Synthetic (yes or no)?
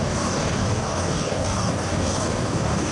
yes